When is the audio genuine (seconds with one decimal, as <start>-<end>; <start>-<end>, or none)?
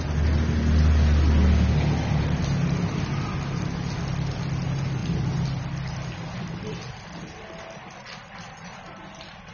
0.0-9.5